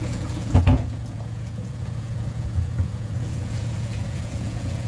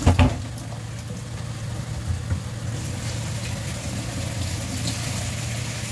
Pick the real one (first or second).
second